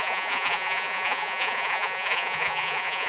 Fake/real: fake